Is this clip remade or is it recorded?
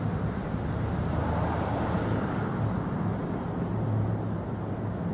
recorded